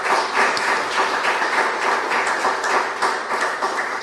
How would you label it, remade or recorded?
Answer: recorded